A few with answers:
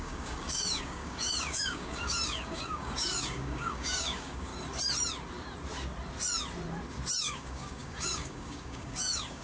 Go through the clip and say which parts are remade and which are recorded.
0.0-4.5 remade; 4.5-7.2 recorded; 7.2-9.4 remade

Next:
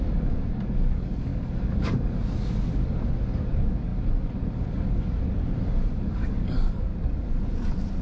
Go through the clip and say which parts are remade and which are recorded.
0.0-6.9 remade; 6.9-8.0 recorded

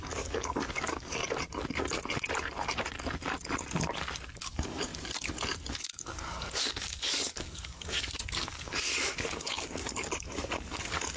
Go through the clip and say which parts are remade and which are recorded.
0.0-1.2 remade; 1.2-4.4 recorded; 4.4-4.9 remade; 4.9-5.7 recorded; 5.7-11.2 remade

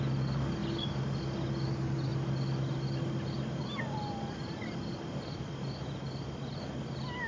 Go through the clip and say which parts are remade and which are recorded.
0.0-7.3 recorded